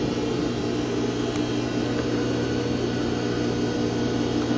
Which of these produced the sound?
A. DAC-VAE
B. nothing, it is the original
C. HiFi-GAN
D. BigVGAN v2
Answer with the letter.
B